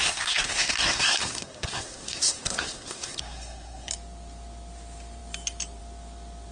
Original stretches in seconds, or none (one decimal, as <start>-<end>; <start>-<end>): 3.9-6.5